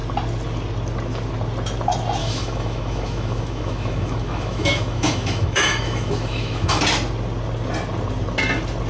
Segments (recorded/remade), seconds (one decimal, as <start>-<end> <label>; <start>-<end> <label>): 0.0-2.2 recorded; 2.2-6.8 remade; 6.8-8.9 recorded